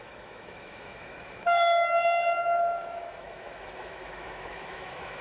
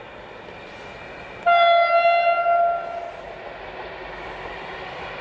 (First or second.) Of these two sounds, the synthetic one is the first